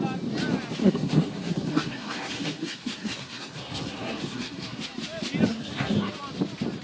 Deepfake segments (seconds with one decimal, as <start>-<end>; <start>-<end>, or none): 0.8-4.8; 5.5-6.1